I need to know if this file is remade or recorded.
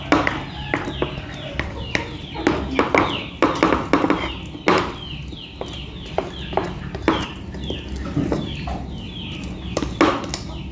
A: recorded